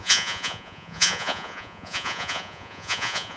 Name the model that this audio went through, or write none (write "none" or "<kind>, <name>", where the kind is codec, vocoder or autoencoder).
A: vocoder, Vocos